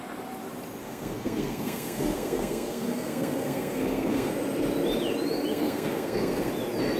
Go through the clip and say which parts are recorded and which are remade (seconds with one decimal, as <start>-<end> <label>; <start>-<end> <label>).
0.0-0.8 recorded; 0.8-4.3 remade; 4.3-5.5 recorded; 5.5-6.5 remade; 6.5-7.0 recorded